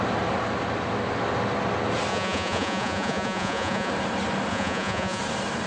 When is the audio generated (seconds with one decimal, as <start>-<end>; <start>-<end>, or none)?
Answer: 2.1-3.9; 4.5-5.2